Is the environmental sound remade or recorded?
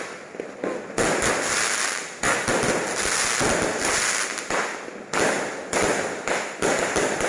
recorded